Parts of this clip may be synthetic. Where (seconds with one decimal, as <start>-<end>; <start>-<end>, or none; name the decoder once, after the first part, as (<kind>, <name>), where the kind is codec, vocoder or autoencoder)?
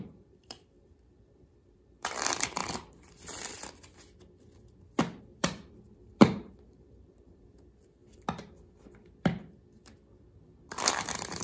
0.0-2.6 (vocoder, BigVGAN v2); 5.2-8.0; 10.7-11.4